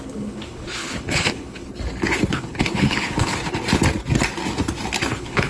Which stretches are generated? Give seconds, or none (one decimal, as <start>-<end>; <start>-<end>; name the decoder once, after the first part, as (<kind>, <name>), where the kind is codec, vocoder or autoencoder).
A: 0.0-1.7 (codec, HILCodec); 2.3-3.4; 5.1-5.5